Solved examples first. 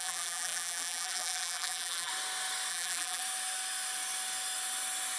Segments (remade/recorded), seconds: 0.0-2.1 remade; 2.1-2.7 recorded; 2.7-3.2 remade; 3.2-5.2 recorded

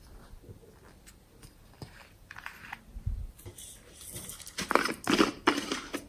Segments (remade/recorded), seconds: 0.0-6.1 recorded